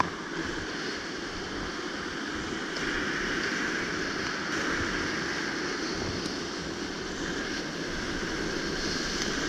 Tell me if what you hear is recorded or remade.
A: recorded